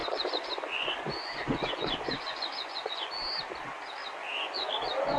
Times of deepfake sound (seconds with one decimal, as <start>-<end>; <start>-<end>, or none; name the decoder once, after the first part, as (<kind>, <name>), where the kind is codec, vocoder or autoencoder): 0.0-3.1 (vocoder, Vocos); 4.0-4.7